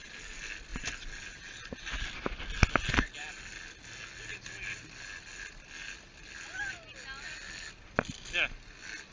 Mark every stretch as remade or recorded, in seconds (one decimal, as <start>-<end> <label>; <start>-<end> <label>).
0.0-9.1 recorded